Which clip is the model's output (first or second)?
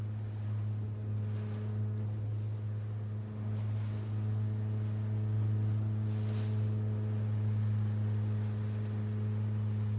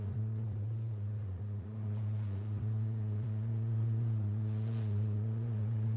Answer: second